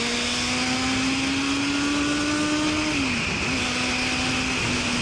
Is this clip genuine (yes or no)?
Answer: yes